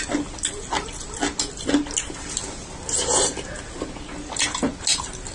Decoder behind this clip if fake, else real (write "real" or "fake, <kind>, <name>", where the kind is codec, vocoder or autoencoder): real